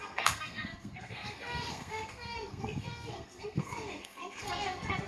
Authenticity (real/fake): fake